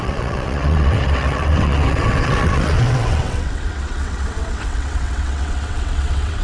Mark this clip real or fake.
fake